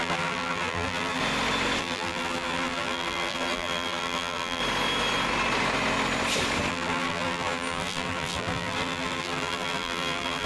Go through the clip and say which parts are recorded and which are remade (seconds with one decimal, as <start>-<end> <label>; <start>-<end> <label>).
0.0-1.2 remade; 1.2-1.8 recorded; 1.8-4.6 remade; 4.6-6.7 recorded; 6.7-10.5 remade